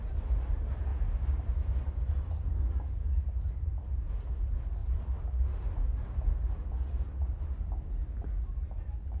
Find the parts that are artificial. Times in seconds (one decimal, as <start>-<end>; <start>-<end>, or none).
none